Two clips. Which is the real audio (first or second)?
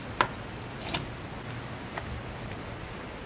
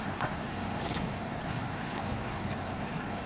first